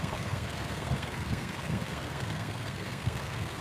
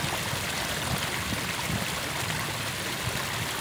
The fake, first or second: first